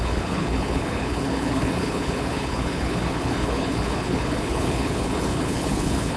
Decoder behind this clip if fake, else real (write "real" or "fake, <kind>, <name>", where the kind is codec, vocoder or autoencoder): fake, codec, HILCodec